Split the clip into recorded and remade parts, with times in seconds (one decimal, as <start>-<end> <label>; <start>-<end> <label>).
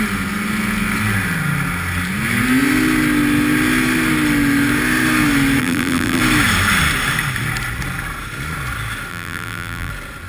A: 0.0-5.6 recorded; 5.6-6.2 remade; 6.2-9.1 recorded; 9.1-9.9 remade; 9.9-10.3 recorded